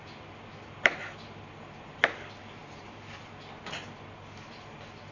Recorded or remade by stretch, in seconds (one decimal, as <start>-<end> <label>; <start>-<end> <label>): 0.0-5.1 recorded